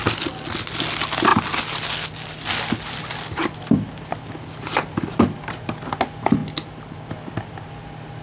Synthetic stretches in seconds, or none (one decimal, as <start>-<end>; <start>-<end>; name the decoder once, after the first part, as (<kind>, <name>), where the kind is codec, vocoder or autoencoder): none